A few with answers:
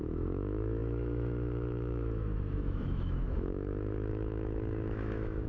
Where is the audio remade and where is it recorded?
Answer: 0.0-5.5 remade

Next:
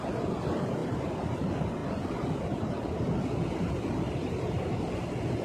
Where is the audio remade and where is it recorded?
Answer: 0.0-5.4 recorded

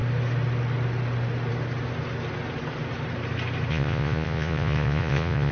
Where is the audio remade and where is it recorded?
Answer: 0.0-3.7 recorded; 3.7-5.5 remade

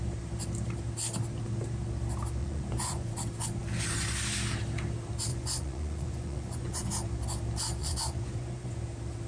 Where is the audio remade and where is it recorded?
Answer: 0.0-2.4 recorded; 2.4-3.1 remade; 3.1-5.3 recorded; 5.3-6.9 remade; 6.9-7.8 recorded; 7.8-8.8 remade; 8.8-9.3 recorded